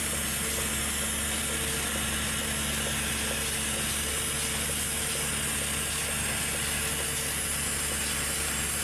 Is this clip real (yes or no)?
yes